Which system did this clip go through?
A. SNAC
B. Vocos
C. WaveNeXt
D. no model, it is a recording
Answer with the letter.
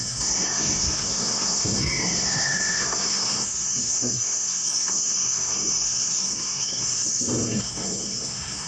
A